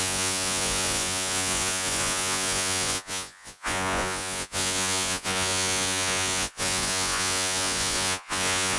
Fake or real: fake